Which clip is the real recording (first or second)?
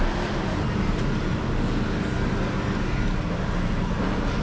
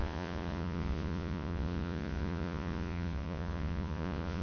first